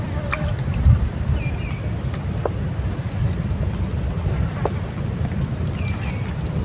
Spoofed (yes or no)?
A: no